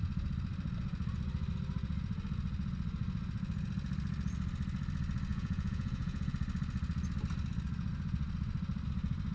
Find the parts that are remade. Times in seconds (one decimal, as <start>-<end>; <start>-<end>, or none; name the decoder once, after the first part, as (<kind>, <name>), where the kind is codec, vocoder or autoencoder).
5.3-6.3 (vocoder, Vocos)